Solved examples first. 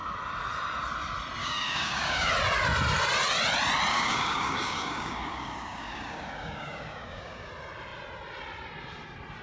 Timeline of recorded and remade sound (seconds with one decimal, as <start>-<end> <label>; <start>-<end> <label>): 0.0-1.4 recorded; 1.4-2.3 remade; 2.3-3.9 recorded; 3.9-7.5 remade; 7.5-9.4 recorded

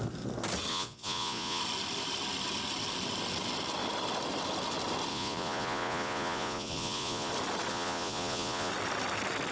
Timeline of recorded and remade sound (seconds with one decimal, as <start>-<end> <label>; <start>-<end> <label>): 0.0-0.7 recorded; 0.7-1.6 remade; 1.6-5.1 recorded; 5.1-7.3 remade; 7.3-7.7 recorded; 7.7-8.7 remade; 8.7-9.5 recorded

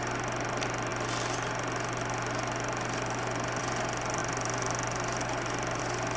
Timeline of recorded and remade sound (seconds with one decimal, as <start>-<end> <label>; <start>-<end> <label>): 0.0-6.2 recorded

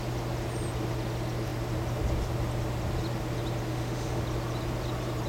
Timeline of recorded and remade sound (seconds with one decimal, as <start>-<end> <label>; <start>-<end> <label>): 0.0-3.7 recorded; 3.7-4.2 remade; 4.2-5.3 recorded